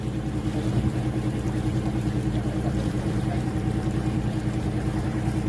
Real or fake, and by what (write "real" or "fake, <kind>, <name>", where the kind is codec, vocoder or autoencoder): fake, vocoder, BigVGAN v2